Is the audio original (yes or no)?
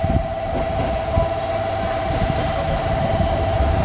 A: yes